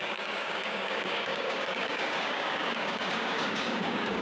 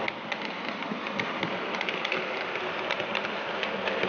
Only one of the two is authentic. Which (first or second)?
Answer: second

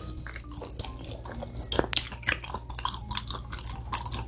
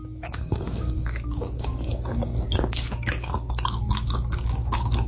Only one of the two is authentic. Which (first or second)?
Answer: first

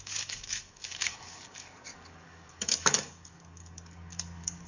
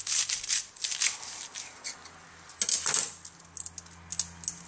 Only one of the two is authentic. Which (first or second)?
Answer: second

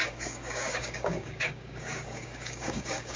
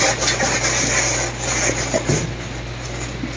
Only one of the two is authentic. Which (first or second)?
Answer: second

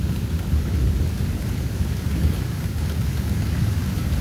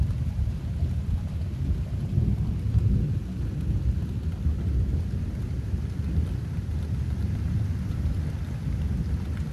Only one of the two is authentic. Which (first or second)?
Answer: second